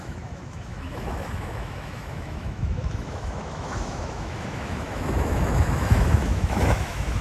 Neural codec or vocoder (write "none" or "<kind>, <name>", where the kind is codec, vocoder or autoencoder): autoencoder, DAC-VAE